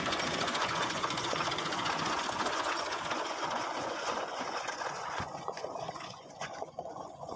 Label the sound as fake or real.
fake